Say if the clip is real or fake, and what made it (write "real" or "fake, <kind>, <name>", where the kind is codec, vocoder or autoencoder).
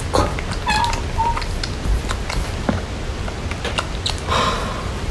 real